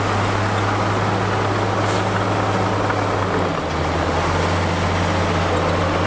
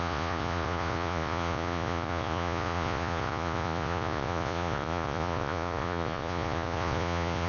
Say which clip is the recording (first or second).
first